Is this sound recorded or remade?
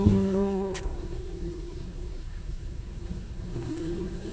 remade